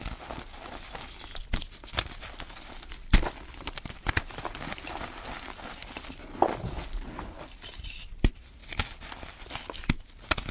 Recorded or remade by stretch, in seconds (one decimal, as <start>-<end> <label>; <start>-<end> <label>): 0.0-10.5 recorded